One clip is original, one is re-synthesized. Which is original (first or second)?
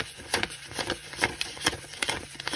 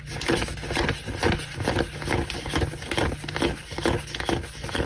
second